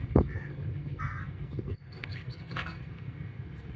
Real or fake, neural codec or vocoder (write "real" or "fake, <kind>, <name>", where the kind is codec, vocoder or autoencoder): fake, codec, SNAC